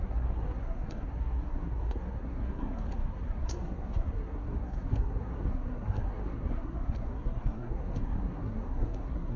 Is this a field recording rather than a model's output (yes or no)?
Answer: no